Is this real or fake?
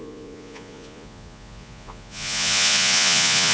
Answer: fake